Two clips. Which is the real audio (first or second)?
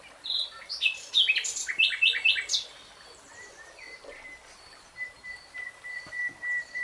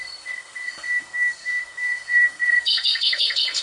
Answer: first